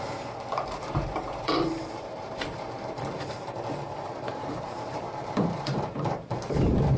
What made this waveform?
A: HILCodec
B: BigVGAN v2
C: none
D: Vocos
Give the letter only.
B